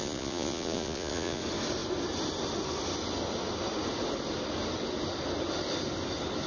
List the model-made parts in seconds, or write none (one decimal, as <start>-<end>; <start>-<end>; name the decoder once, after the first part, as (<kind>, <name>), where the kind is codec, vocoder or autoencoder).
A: 0.0-1.4 (vocoder, Vocos)